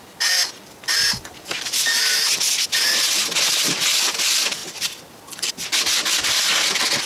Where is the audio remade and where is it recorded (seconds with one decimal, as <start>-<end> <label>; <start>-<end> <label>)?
0.0-7.1 recorded

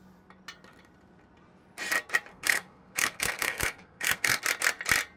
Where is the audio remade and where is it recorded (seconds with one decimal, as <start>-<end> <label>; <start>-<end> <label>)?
0.0-2.3 recorded; 2.3-4.4 remade; 4.4-5.2 recorded

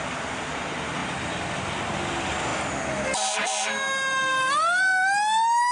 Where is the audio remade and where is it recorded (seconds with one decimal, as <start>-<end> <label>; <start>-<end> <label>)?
0.0-5.7 recorded